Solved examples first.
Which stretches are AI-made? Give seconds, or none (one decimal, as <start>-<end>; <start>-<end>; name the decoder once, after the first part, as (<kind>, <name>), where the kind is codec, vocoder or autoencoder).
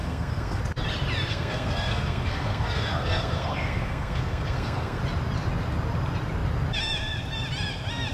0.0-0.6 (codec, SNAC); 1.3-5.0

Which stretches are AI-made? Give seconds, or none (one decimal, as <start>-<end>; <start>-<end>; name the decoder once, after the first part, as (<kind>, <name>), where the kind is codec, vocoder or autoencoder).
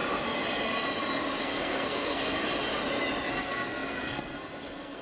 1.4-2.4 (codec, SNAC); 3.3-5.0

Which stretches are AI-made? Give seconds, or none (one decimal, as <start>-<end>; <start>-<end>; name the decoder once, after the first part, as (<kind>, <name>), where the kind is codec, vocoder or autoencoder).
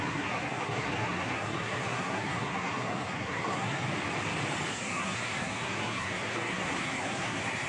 0.0-3.9 (codec, SNAC); 4.7-7.7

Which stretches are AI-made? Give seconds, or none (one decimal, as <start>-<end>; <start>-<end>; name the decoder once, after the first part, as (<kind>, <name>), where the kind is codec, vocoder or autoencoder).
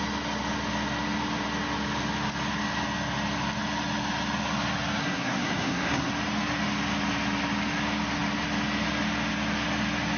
5.0-6.1 (codec, SNAC)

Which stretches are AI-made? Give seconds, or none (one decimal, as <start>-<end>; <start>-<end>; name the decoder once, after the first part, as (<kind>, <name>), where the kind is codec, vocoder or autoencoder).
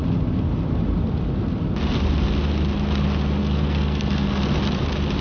3.4-4.4 (codec, SNAC)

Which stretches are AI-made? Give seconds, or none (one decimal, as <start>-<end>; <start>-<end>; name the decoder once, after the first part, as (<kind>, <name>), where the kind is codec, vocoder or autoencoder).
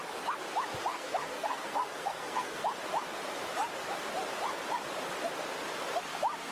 0.9-2.7 (codec, SNAC)